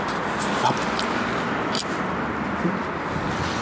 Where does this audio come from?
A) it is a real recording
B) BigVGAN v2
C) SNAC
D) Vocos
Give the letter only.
A